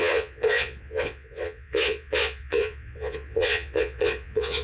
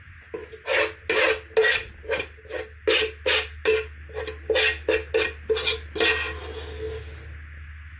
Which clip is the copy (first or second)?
first